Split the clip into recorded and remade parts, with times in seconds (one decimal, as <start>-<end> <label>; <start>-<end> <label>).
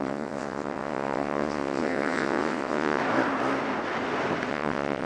0.0-3.0 remade; 3.0-4.5 recorded; 4.5-5.1 remade